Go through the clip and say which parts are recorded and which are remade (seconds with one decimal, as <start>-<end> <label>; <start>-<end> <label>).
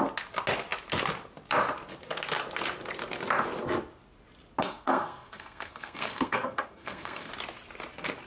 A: 0.0-4.6 recorded; 4.6-7.3 remade; 7.3-8.3 recorded